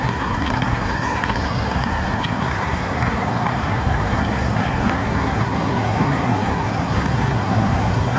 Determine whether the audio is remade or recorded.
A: remade